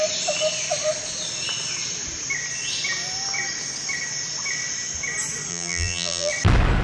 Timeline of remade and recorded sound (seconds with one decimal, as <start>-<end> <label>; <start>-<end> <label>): 0.0-5.5 recorded; 5.5-6.3 remade; 6.3-6.8 recorded